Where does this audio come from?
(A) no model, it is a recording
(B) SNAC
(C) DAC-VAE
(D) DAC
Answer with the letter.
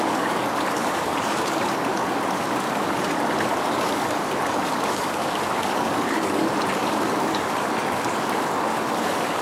D